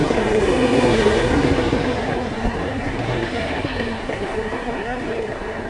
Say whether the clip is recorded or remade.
remade